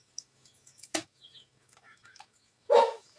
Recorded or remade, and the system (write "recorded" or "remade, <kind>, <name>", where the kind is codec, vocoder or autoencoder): remade, autoencoder, DAC-VAE